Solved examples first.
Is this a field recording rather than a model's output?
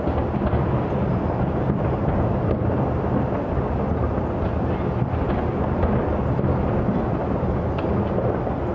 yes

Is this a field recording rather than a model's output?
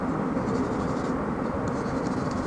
yes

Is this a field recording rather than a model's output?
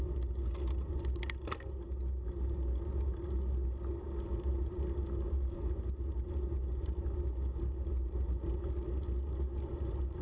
yes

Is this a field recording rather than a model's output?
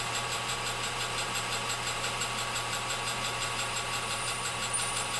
no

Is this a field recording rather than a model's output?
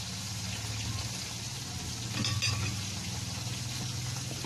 yes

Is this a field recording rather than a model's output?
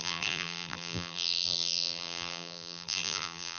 no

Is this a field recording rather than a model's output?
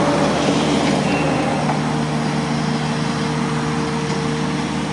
yes